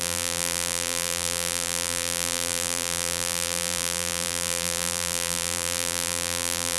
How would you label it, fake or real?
fake